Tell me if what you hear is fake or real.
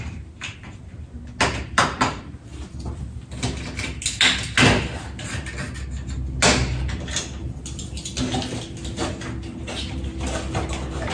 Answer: real